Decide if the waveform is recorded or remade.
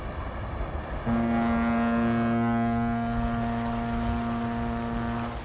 recorded